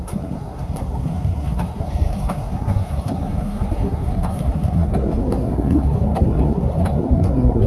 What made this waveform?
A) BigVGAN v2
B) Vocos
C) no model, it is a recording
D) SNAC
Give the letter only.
D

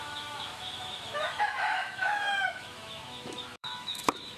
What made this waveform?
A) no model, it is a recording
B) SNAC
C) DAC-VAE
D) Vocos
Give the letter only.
C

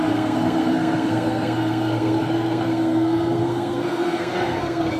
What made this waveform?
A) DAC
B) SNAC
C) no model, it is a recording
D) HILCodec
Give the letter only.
B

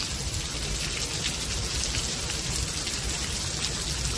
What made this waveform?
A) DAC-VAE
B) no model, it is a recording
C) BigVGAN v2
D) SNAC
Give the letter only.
B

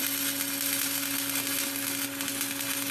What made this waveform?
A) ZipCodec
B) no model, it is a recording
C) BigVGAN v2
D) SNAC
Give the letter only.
B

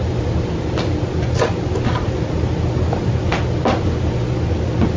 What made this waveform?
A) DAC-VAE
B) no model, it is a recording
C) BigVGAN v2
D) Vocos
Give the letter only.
B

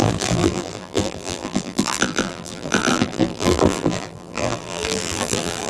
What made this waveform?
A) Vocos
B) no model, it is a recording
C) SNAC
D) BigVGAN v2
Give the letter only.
D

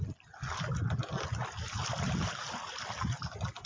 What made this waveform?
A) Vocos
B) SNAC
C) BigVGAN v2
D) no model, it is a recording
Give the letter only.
D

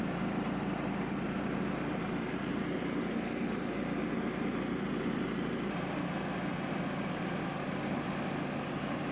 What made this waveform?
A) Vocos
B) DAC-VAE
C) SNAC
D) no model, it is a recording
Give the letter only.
D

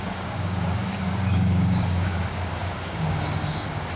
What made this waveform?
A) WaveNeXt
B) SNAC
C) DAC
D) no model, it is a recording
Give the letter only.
C